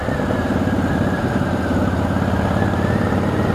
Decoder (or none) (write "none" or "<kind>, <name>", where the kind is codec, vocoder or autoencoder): none